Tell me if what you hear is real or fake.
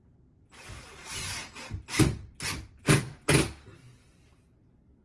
real